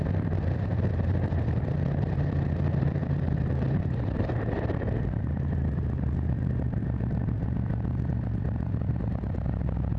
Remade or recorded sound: remade